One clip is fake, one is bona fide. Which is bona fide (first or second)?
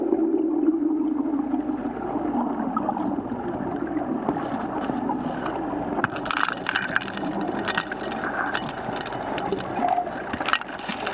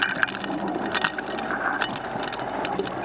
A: second